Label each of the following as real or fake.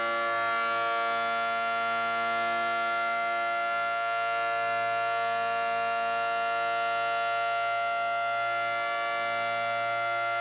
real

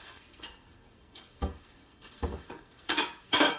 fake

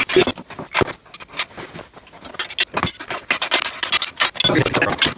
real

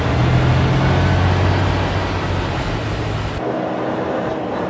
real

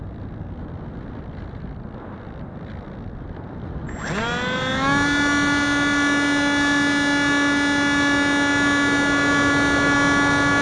real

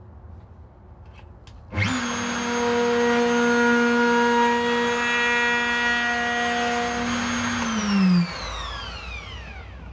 real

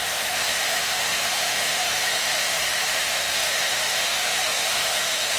fake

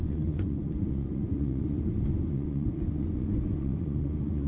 fake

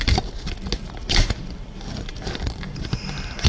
real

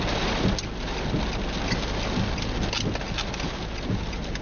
real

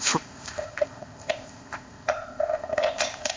fake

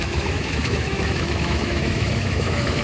fake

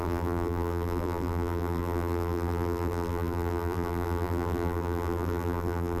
fake